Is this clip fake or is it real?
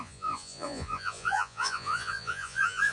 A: fake